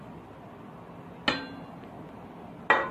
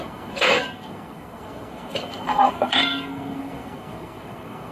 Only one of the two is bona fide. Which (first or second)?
first